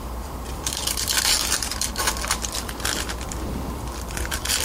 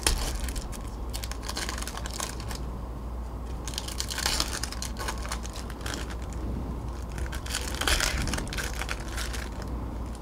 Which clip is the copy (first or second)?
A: first